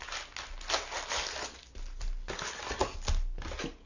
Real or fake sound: real